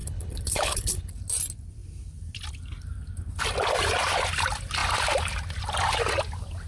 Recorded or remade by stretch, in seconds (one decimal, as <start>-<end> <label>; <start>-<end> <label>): 0.0-1.1 remade; 1.1-6.7 recorded